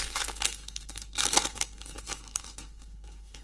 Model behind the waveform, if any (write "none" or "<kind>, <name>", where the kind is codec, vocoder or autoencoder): codec, SNAC